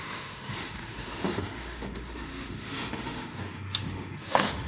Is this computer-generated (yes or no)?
yes